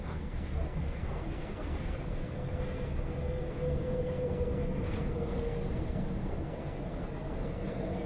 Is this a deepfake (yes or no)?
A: yes